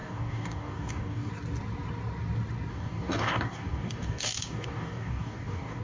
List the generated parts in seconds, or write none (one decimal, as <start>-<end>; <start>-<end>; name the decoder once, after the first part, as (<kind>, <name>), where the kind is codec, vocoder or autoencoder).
0.0-1.3 (codec, DAC); 2.7-5.8